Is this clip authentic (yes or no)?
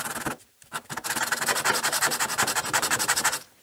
no